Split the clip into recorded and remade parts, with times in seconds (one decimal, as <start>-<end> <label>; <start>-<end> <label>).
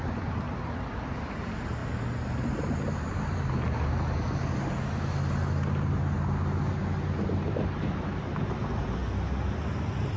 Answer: 0.0-10.2 recorded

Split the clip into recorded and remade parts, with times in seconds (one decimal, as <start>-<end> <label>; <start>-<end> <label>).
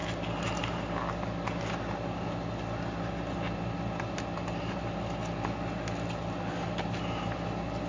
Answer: 0.0-7.9 recorded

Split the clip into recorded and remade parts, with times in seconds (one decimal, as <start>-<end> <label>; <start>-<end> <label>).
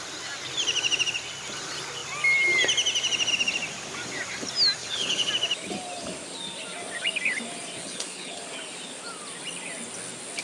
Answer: 0.0-4.8 recorded; 4.8-5.3 remade; 5.3-7.8 recorded; 7.8-8.4 remade; 8.4-10.4 recorded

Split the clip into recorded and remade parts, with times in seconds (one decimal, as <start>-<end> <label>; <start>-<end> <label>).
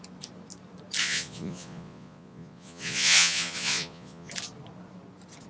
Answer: 0.0-1.0 recorded; 1.0-4.3 remade; 4.3-5.5 recorded